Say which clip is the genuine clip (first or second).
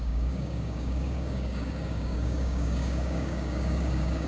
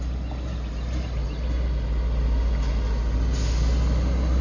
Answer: second